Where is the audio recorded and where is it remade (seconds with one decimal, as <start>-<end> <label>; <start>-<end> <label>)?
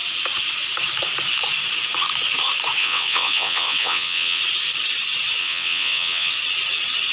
0.0-2.8 recorded; 2.8-4.4 remade; 4.4-5.4 recorded; 5.4-6.3 remade; 6.3-7.1 recorded